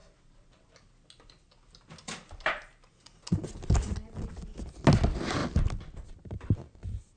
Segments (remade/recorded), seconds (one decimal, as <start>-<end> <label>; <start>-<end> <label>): 0.0-7.2 recorded